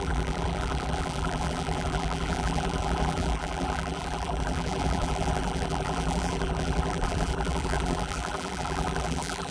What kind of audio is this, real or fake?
fake